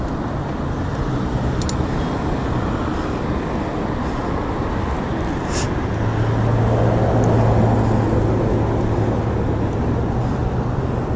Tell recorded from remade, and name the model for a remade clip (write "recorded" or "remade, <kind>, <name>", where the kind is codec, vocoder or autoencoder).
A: recorded